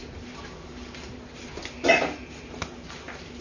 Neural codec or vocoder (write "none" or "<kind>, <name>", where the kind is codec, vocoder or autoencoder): none